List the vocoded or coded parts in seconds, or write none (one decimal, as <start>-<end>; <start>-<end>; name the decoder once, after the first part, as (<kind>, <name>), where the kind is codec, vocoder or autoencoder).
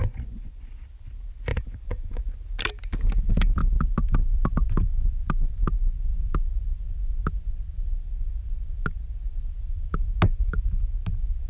0.0-0.6 (vocoder, Vocos); 1.5-2.2